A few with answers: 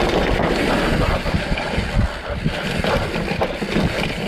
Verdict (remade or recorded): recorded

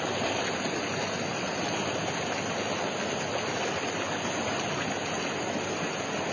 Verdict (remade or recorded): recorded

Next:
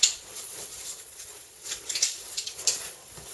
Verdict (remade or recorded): remade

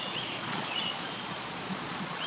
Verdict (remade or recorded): remade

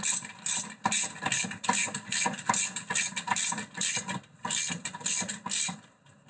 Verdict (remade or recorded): recorded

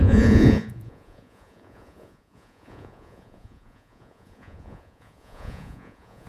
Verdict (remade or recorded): remade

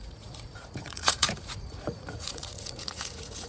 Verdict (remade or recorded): remade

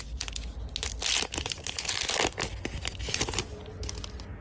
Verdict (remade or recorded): recorded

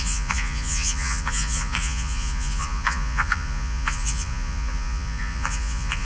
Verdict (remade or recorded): remade